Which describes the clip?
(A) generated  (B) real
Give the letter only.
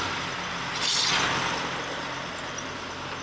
B